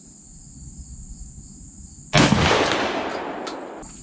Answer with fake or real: real